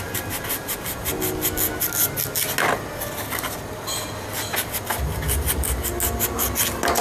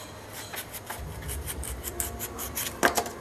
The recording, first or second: first